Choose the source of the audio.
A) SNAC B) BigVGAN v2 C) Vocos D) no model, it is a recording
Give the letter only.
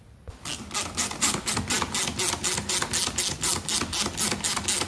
D